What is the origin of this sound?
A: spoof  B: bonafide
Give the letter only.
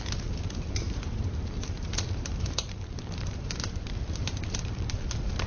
A